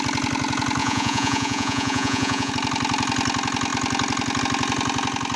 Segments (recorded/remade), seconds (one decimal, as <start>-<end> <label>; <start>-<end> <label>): 0.0-0.8 recorded; 0.8-2.5 remade; 2.5-5.4 recorded